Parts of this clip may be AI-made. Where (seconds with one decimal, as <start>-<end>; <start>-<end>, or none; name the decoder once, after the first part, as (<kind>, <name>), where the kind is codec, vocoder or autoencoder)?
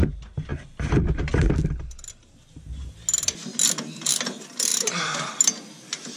4.7-5.3 (vocoder, BigVGAN v2)